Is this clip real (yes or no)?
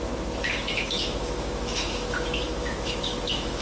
no